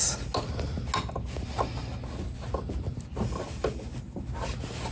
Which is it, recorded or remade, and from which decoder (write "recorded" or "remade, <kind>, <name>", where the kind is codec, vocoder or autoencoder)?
recorded